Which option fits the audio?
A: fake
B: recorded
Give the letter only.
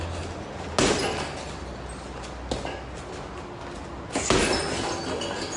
B